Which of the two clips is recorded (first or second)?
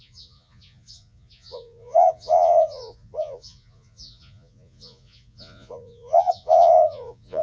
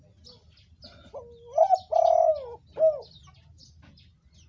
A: second